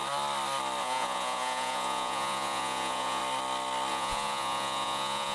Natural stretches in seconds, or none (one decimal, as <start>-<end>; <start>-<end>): 0.0-0.8; 3.2-3.9